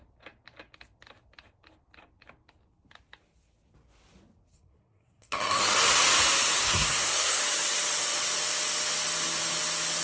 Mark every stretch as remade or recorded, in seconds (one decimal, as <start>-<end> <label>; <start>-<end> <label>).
0.0-4.5 recorded; 4.5-5.6 remade; 5.6-6.6 recorded; 6.6-7.4 remade; 7.4-10.0 recorded